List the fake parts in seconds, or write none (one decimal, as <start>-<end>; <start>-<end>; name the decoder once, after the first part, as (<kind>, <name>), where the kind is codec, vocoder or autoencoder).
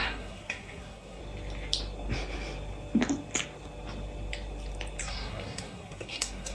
0.0-1.2 (codec, SNAC); 5.0-6.5